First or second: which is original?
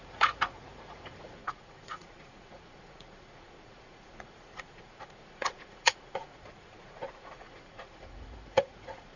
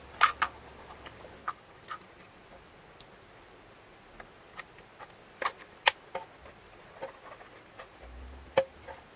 second